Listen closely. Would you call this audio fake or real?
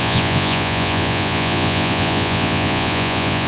fake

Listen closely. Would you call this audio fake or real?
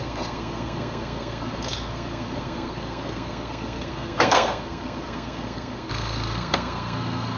fake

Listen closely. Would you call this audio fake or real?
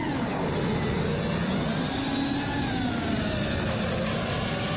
real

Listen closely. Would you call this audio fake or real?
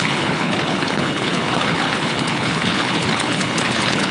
fake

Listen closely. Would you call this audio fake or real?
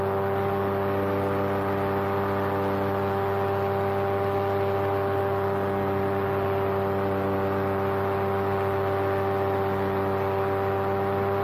real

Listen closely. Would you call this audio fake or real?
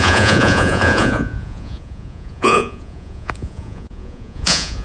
fake